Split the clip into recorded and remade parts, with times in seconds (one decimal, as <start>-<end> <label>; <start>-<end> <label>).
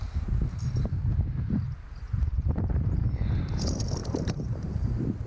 0.0-4.0 recorded; 4.0-5.3 remade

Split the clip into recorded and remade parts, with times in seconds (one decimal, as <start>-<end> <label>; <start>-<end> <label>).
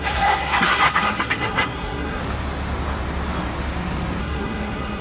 0.0-2.2 remade; 2.2-4.2 recorded; 4.2-5.0 remade